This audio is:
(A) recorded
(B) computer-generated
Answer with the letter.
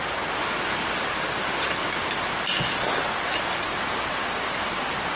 A